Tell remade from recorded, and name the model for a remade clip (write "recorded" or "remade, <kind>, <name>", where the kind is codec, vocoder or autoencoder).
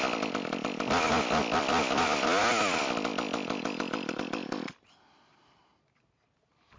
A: recorded